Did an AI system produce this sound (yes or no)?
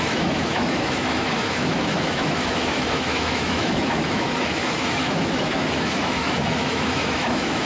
yes